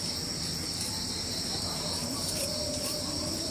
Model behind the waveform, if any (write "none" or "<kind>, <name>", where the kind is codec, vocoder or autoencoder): vocoder, BigVGAN v2